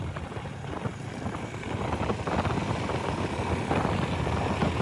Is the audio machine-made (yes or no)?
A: no